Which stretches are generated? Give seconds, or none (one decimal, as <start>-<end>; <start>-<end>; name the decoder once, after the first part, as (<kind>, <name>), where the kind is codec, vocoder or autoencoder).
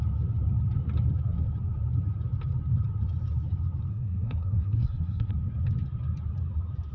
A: 3.9-5.3 (codec, SNAC)